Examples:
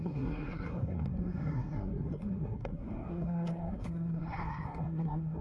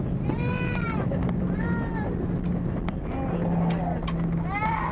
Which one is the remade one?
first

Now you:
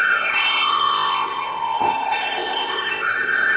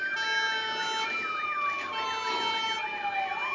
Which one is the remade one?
first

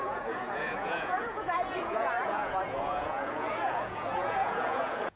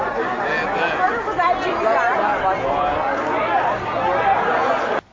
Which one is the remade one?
first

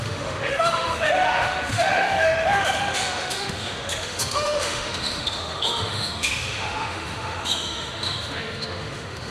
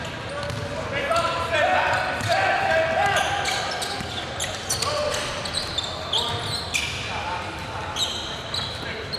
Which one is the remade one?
first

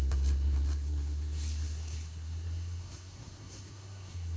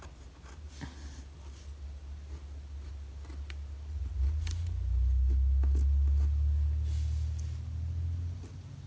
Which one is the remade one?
first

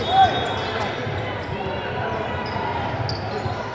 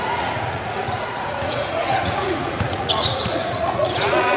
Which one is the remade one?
second